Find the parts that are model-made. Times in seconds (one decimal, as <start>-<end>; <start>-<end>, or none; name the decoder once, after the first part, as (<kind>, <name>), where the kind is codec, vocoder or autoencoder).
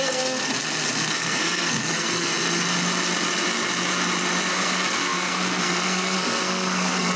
0.0-0.5 (codec, SNAC); 1.1-2.3; 4.5-7.2